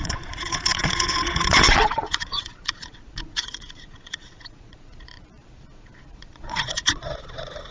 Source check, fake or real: fake